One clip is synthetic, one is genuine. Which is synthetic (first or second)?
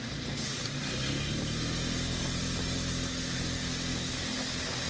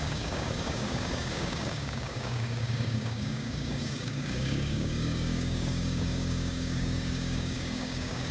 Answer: second